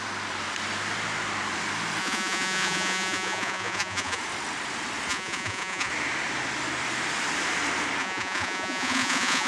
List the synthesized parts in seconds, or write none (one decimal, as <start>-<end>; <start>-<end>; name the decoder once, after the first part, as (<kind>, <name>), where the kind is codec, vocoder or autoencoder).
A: 2.0-4.2 (vocoder, Vocos); 5.1-5.9; 8.0-9.5